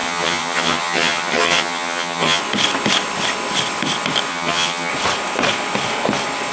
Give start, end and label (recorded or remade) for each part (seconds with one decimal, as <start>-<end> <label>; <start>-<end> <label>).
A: 0.0-2.4 remade; 2.4-4.3 recorded; 4.3-4.9 remade; 4.9-6.5 recorded